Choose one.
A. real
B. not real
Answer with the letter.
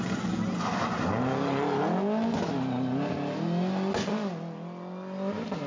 A